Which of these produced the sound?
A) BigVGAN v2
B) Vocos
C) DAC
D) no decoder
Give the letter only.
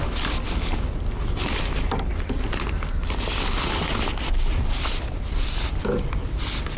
D